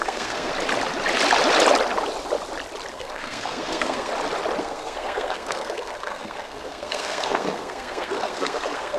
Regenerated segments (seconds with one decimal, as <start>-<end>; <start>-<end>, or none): 0.0-0.5; 2.9-4.1; 4.6-9.0